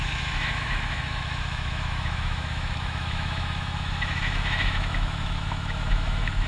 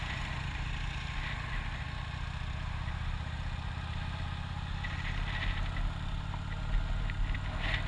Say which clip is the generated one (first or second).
first